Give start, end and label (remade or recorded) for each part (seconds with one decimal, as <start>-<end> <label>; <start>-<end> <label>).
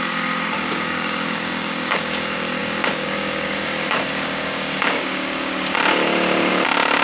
0.0-7.0 remade